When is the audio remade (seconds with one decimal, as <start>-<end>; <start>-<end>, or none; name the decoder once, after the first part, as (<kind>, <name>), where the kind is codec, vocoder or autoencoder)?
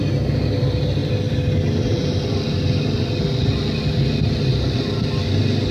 none